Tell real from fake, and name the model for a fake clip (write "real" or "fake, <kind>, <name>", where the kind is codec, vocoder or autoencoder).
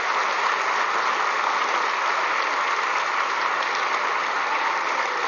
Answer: real